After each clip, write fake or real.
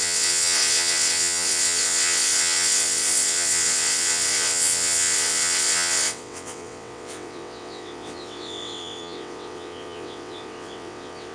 fake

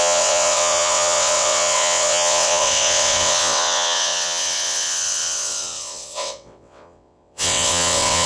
fake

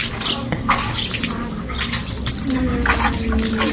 real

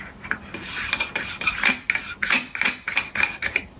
real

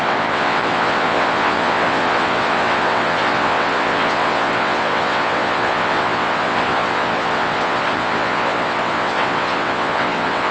fake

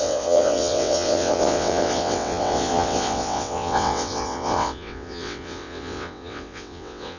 fake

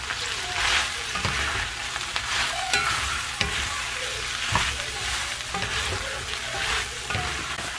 real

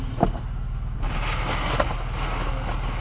real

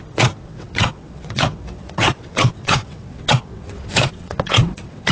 fake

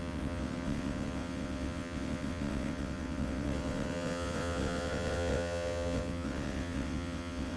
fake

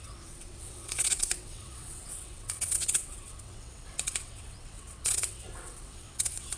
fake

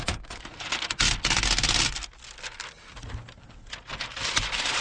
real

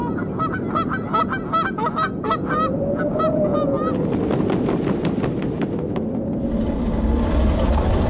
real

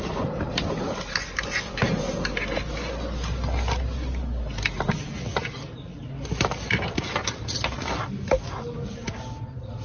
real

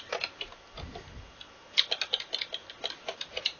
real